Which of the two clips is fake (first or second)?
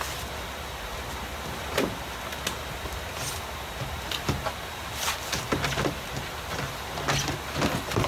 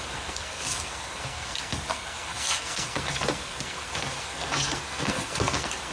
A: second